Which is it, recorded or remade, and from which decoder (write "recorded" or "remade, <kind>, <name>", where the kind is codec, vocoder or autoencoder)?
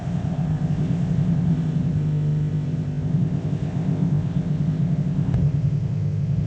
remade, codec, ZipCodec